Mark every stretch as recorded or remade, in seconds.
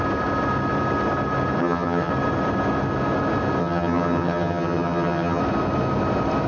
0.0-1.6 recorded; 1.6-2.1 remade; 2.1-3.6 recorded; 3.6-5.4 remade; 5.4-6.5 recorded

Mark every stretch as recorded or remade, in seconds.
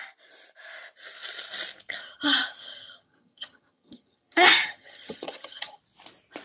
0.0-2.0 recorded; 2.0-5.8 remade; 5.8-6.4 recorded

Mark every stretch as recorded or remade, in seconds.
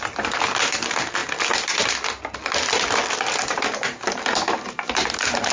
0.0-5.5 recorded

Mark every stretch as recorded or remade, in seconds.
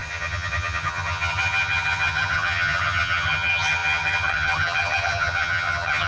0.0-6.1 remade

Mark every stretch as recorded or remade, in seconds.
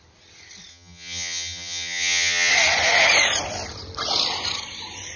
0.0-0.7 recorded; 0.7-2.5 remade; 2.5-5.2 recorded